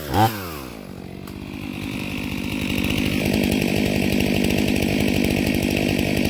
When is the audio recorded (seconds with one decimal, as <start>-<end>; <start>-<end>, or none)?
0.0-1.7; 5.5-6.3